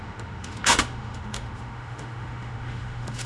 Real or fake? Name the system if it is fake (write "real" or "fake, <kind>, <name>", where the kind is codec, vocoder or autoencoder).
fake, autoencoder, DAC-VAE